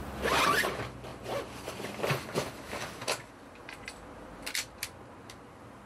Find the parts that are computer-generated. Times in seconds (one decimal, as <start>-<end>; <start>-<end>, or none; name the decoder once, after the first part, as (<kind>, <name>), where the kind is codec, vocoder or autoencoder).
none